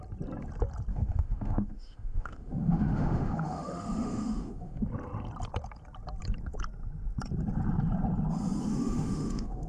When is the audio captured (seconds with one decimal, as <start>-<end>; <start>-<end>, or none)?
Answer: 0.0-0.9; 4.8-8.6